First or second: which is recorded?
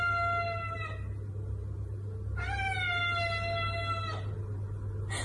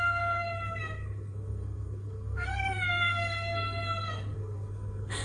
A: first